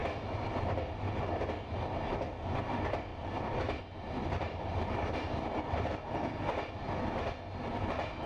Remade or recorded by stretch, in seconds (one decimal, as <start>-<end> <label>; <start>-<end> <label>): 0.0-1.4 remade; 1.4-3.1 recorded; 3.1-6.7 remade; 6.7-8.3 recorded